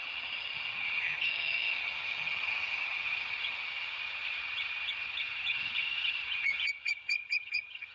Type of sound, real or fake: fake